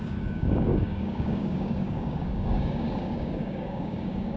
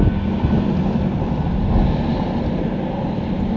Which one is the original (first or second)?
second